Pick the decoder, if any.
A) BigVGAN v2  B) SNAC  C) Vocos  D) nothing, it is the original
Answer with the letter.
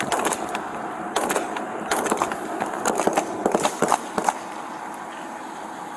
A